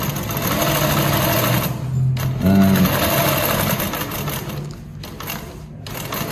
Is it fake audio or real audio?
real